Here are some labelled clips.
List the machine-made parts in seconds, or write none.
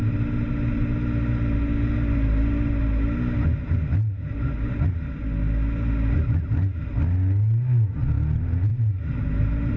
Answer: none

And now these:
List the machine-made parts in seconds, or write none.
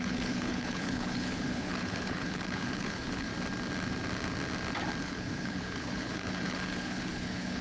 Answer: 0.0-3.3 (codec, HILCodec); 5.0-7.6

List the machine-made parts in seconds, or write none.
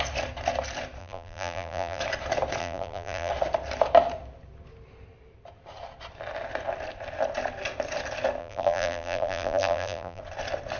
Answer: 1.0-2.0 (vocoder, BigVGAN v2); 2.6-3.3; 8.4-10.2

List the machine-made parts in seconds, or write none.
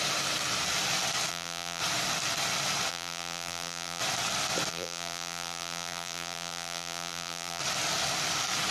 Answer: 1.3-1.8 (vocoder, BigVGAN v2); 2.9-4.0; 4.7-7.6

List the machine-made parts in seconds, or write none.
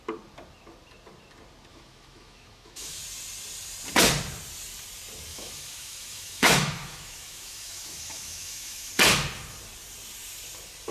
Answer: 1.7-3.0 (autoencoder, DAC-VAE); 5.3-8.9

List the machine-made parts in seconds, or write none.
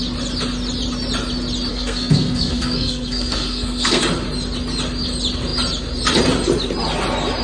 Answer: 1.7-4.0 (codec, SNAC)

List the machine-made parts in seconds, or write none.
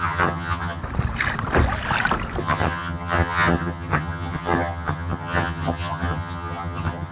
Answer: 0.0-0.8 (vocoder, HiFi-GAN); 2.4-7.1